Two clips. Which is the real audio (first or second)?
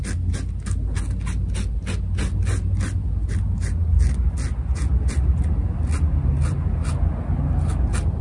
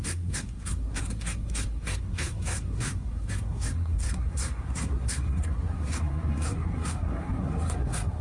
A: first